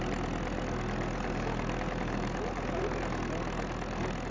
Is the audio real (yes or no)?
yes